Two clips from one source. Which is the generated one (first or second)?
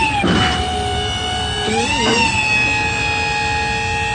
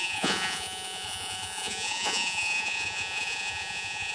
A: second